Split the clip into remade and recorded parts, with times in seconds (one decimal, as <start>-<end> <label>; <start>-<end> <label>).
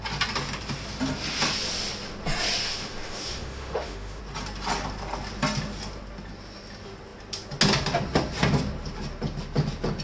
0.0-2.6 recorded; 2.6-4.2 remade; 4.2-10.0 recorded